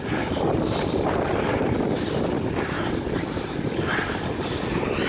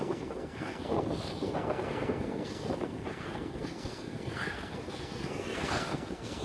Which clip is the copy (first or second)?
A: second